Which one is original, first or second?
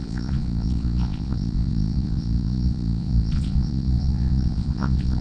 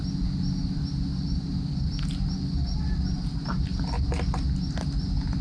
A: second